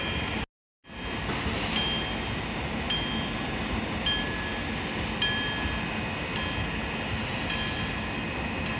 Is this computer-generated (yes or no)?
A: no